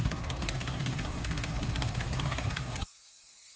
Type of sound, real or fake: fake